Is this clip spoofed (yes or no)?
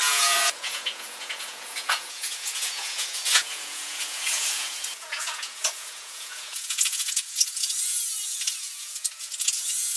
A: yes